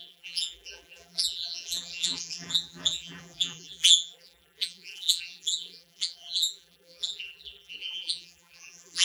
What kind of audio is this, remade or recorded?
remade